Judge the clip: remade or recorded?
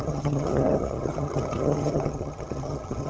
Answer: remade